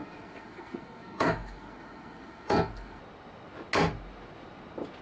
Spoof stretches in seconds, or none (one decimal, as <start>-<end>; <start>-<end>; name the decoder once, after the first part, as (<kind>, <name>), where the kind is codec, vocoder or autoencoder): 0.0-3.0 (codec, SNAC)